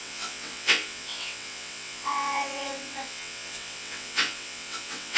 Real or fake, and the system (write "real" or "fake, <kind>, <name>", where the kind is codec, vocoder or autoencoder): fake, vocoder, WaveNeXt